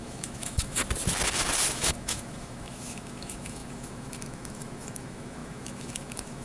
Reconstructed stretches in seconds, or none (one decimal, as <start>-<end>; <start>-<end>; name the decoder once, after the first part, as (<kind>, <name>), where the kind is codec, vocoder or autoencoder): 0.0-0.8 (autoencoder, DAC-VAE); 1.7-6.4